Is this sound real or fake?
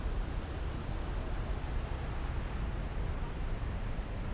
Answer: real